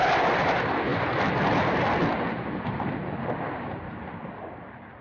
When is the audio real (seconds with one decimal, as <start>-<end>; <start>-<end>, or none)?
0.0-5.0